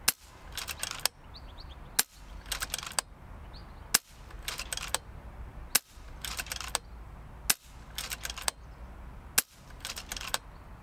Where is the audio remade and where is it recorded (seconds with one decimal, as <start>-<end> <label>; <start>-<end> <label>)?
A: 0.0-10.8 recorded